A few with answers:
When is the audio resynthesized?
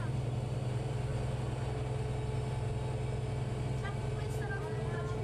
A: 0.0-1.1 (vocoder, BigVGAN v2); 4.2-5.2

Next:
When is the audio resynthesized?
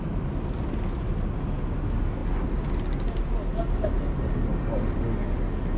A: none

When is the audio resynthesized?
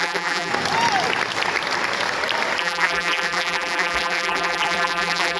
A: 0.0-0.5 (vocoder, BigVGAN v2); 2.6-5.4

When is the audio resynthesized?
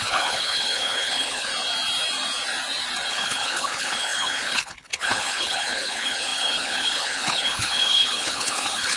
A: 0.0-1.5 (codec, HILCodec); 3.1-9.0